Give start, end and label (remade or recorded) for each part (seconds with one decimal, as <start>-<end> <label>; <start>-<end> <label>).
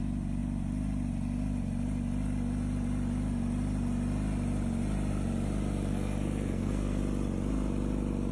0.0-5.9 recorded; 5.9-7.0 remade; 7.0-8.3 recorded